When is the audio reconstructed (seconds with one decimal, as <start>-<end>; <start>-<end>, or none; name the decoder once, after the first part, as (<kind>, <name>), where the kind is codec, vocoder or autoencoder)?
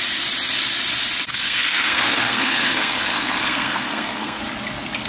1.3-4.4 (codec, SNAC)